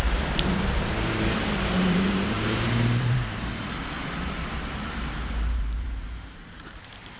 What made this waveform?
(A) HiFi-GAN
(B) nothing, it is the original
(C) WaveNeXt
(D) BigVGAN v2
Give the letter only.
D